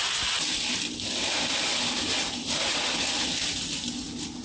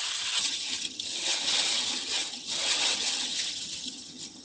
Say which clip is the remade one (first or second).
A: second